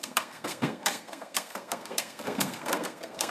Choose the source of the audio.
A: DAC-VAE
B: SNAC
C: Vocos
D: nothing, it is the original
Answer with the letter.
B